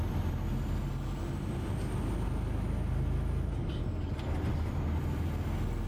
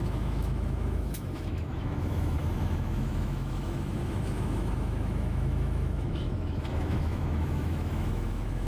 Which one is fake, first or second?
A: second